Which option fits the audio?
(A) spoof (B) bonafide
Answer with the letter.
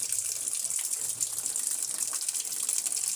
B